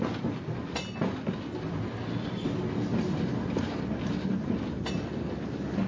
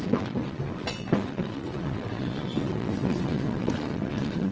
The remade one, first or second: second